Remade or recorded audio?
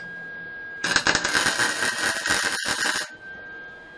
recorded